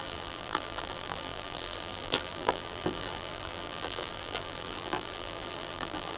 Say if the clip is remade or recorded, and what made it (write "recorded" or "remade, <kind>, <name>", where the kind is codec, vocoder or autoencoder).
remade, vocoder, BigVGAN v2